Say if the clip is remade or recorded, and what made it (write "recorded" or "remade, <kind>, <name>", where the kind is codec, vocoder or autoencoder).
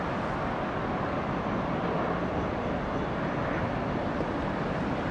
recorded